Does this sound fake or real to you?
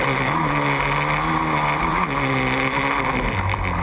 real